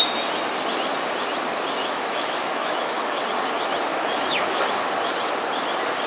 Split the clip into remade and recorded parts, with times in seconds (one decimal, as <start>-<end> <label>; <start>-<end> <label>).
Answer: 0.0-1.8 recorded; 1.8-3.2 remade; 3.2-3.9 recorded; 3.9-4.6 remade; 4.6-6.1 recorded